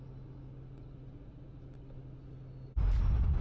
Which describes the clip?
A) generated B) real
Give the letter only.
B